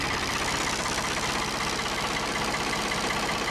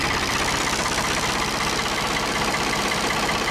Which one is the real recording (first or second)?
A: first